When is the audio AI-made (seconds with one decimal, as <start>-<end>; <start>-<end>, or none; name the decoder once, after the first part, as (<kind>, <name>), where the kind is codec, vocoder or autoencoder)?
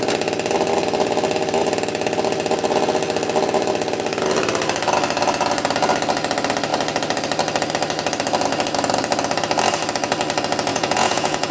10.7-11.5 (vocoder, Vocos)